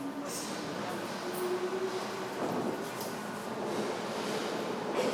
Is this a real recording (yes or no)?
yes